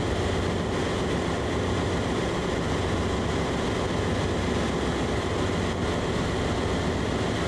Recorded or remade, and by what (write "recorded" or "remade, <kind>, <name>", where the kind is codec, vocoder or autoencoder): recorded